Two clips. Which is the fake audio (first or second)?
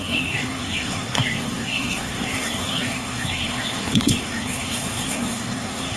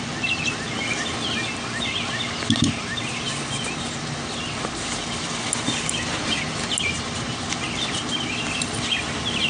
first